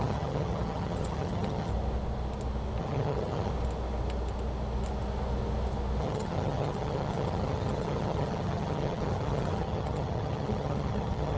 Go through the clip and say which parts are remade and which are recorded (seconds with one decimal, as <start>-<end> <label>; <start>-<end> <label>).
0.0-1.7 remade; 1.7-2.8 recorded; 2.8-3.5 remade; 3.5-6.0 recorded; 6.0-11.4 remade